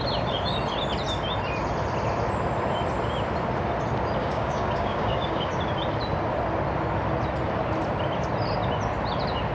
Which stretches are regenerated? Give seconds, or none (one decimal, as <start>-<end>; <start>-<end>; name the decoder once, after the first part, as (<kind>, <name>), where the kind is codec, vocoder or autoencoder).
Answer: 4.2-5.5 (codec, DAC)